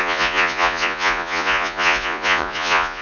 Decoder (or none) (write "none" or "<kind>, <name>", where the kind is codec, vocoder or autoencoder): vocoder, Vocos